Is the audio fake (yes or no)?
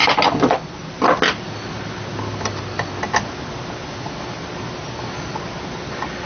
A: no